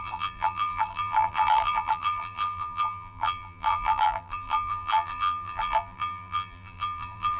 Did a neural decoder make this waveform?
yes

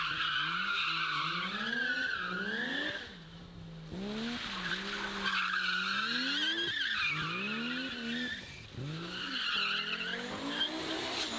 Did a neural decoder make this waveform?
no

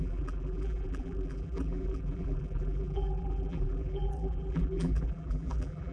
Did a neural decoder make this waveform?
yes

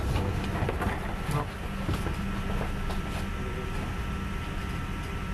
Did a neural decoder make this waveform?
no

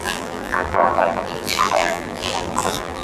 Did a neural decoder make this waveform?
yes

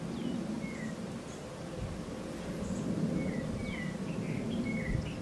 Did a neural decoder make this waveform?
no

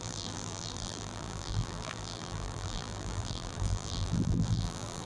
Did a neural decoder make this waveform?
yes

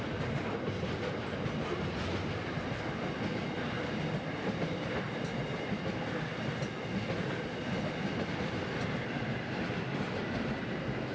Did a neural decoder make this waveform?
no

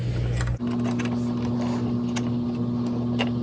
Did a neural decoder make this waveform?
no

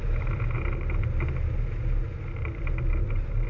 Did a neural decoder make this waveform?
no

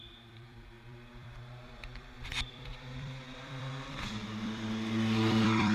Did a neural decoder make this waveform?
yes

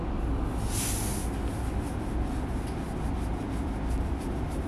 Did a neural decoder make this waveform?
no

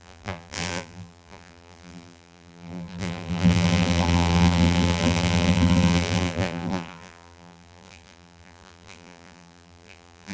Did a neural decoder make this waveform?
yes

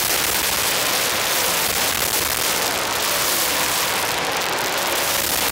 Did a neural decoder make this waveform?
yes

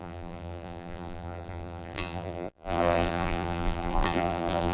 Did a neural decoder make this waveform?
yes